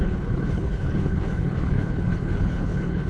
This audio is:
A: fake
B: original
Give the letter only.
A